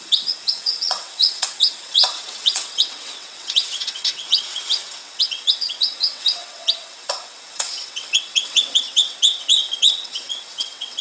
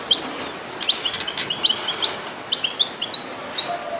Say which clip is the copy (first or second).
first